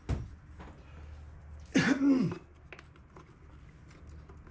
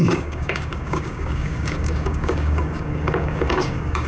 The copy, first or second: second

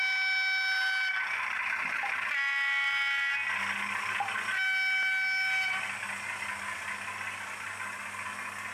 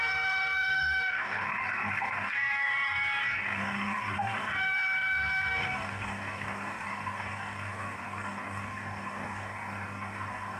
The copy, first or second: second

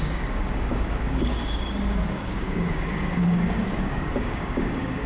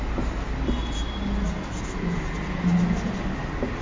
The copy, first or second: first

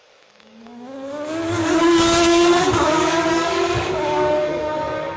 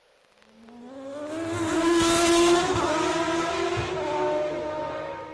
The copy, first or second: first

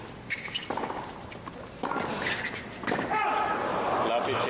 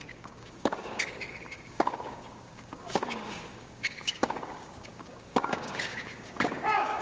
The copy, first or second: second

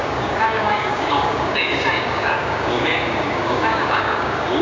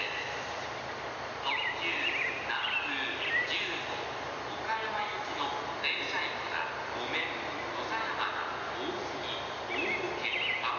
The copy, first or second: first